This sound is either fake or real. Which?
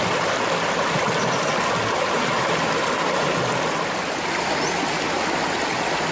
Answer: real